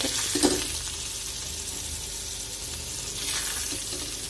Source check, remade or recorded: recorded